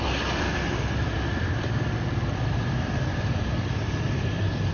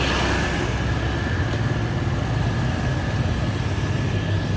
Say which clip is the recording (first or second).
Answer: second